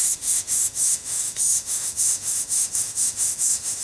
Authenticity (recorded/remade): remade